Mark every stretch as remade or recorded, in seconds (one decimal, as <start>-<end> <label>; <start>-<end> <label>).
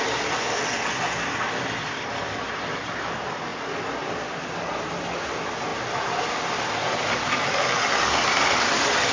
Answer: 0.0-9.1 recorded